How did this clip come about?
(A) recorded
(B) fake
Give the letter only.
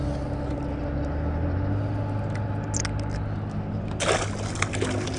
A